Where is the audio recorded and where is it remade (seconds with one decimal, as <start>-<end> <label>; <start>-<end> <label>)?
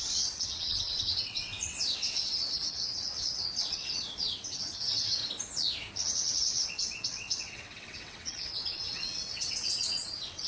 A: 0.0-5.2 remade; 5.2-6.7 recorded; 6.7-10.5 remade